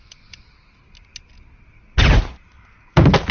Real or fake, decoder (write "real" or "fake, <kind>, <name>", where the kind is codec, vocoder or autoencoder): real